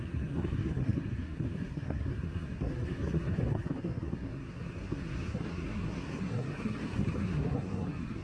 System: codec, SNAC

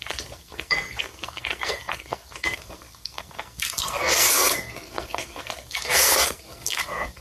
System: codec, SNAC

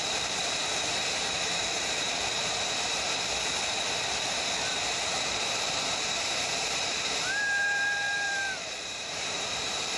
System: vocoder, BigVGAN v2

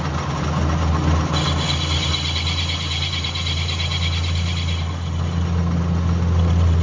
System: none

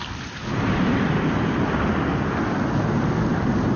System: none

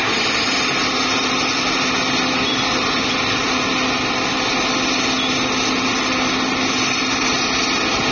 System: none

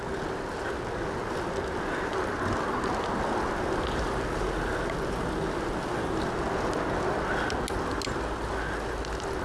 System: none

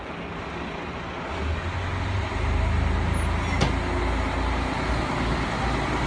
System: none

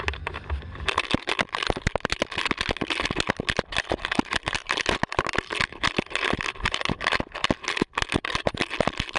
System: none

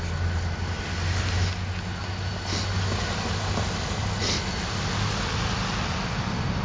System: none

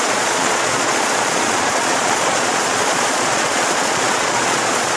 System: vocoder, Vocos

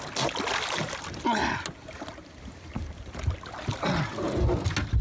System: none